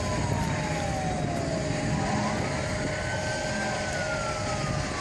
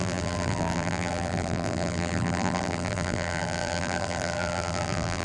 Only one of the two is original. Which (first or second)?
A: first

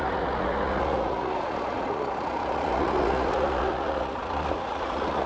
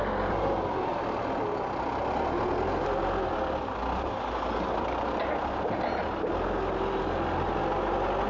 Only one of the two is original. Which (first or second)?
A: second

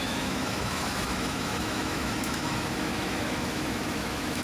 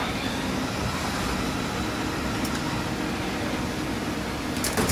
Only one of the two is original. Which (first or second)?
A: second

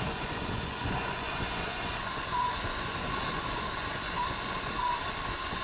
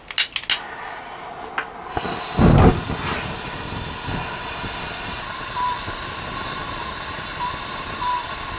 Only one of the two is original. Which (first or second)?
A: second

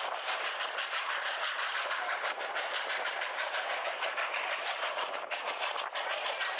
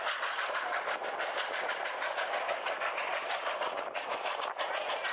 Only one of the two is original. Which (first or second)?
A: second